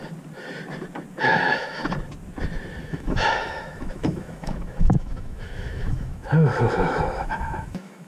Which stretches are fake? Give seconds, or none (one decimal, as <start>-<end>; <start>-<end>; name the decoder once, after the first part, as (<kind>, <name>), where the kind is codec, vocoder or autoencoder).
1.2-1.8 (autoencoder, DAC-VAE); 2.8-8.1